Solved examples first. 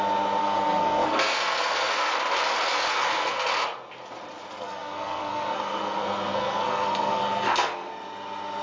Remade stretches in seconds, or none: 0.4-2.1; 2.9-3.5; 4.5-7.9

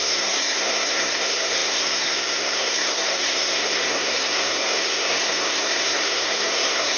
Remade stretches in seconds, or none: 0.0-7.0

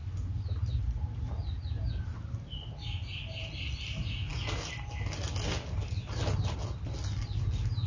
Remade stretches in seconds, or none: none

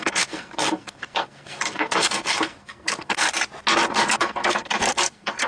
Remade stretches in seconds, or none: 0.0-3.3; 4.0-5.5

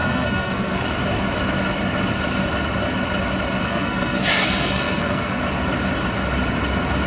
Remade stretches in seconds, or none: 0.0-0.9; 3.6-5.4

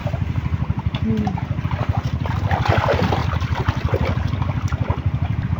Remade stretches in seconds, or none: none